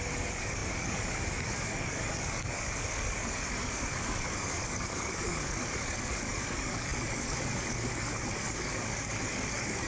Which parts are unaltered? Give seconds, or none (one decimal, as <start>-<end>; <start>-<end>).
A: none